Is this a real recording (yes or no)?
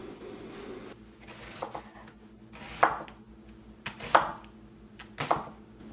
yes